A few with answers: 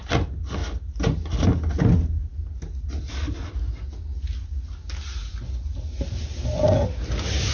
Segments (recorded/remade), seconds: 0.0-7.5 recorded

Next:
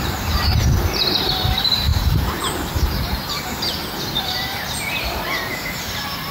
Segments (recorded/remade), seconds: 0.0-6.3 remade

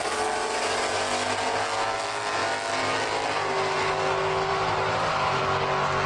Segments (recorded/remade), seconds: 0.0-4.5 recorded; 4.5-5.4 remade; 5.4-6.1 recorded

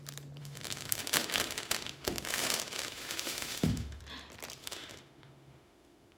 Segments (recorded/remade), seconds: 0.0-0.4 recorded; 0.4-4.0 remade; 4.0-4.6 recorded; 4.6-6.2 remade

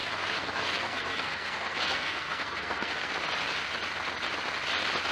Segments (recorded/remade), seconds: 0.0-3.1 remade; 3.1-5.1 recorded